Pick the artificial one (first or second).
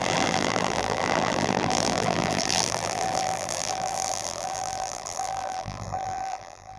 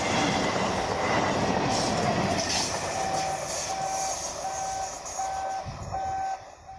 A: first